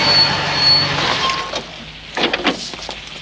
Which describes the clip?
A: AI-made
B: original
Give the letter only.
B